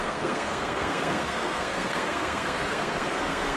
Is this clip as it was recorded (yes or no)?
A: no